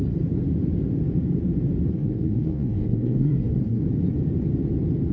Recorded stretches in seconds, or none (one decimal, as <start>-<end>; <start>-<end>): 0.0-1.9; 3.8-5.1